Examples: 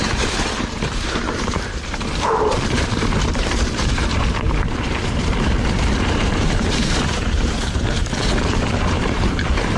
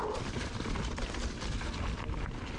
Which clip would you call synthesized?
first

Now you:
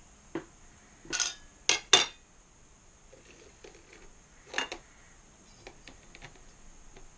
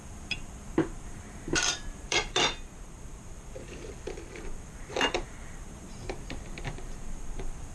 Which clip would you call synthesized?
second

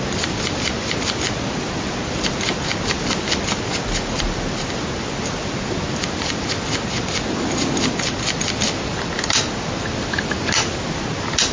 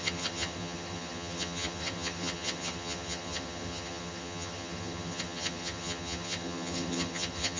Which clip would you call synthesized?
second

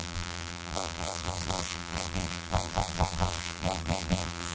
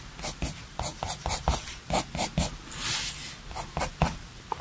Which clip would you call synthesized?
first